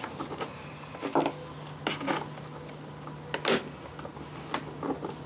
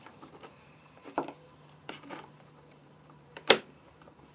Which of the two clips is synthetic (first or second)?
second